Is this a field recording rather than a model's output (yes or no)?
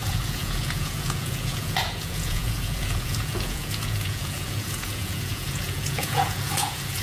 no